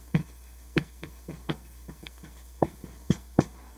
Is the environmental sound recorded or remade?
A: remade